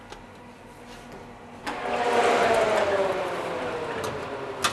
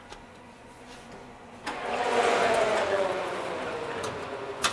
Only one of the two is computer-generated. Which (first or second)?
second